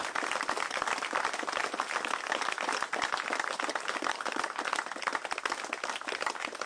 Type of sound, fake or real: real